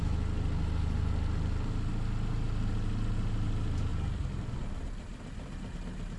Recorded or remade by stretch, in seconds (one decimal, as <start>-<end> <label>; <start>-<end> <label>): 0.0-6.2 recorded